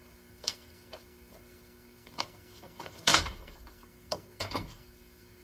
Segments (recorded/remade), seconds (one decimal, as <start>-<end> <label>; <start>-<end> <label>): 0.0-5.4 remade